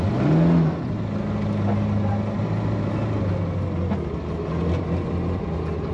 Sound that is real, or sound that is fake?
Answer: real